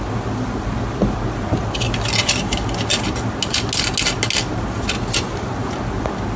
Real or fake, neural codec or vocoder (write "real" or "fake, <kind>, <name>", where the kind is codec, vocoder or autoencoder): real